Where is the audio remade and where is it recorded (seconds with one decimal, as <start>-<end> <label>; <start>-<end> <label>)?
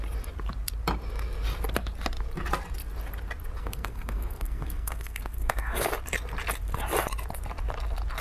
0.0-3.6 recorded; 3.6-5.9 remade; 5.9-8.2 recorded